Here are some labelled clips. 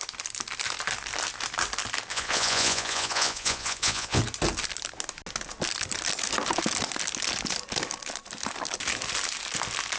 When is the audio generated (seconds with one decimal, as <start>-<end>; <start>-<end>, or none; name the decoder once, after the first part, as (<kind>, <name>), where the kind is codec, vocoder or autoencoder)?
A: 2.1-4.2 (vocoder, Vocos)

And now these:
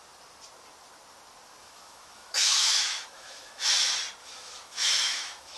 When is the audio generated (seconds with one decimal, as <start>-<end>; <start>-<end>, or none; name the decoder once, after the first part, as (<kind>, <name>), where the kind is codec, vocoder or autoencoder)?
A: 1.6-3.7 (autoencoder, DAC-VAE); 4.2-5.6

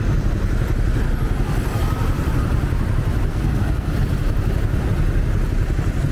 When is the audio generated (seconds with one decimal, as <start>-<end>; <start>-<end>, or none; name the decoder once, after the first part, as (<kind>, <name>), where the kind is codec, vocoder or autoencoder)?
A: 3.3-3.9 (codec, SNAC)